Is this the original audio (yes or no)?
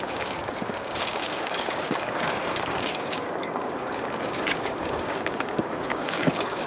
no